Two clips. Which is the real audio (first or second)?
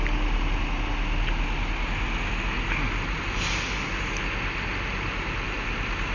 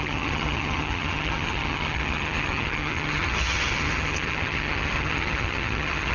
first